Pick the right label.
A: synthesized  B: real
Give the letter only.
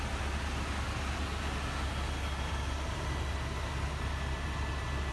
B